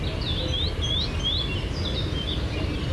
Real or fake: real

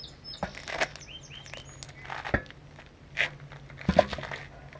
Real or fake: real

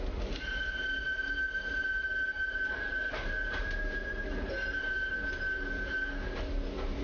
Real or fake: real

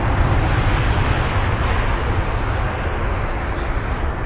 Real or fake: real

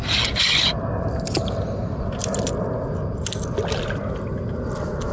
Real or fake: real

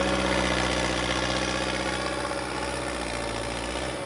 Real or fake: real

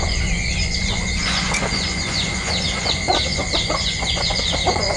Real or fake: fake